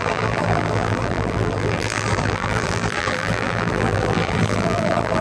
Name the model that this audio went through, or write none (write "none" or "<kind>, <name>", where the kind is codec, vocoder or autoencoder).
vocoder, BigVGAN v2